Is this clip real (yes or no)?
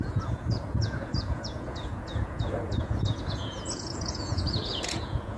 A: no